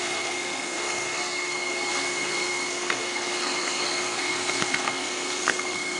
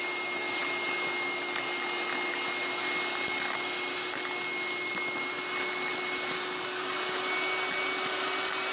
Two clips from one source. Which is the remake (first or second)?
first